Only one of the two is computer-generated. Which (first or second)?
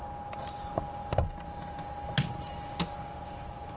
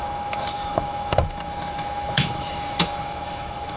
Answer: second